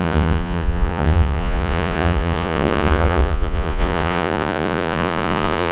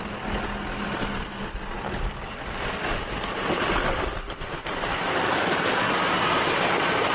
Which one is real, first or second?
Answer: second